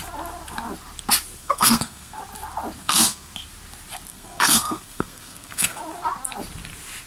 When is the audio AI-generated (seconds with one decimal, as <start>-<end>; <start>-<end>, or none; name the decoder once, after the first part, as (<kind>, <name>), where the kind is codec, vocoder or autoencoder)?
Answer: 1.4-2.2 (codec, SNAC); 2.8-3.3; 4.1-5.8